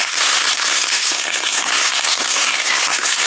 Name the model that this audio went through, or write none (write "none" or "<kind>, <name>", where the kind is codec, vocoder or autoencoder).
codec, SNAC